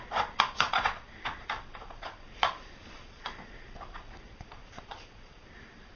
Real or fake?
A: fake